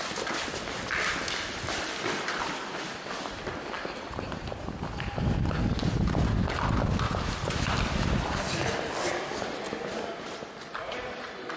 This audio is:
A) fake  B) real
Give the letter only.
A